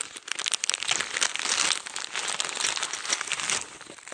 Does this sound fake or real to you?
real